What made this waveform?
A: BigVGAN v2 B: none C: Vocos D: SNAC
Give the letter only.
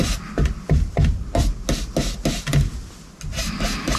B